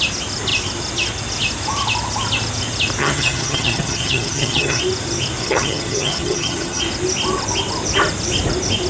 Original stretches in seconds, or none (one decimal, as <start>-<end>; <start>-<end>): 0.0-3.0; 4.8-5.4; 6.8-8.9